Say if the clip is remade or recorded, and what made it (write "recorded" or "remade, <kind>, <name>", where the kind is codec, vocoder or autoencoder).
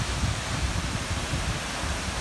remade, vocoder, BigVGAN v2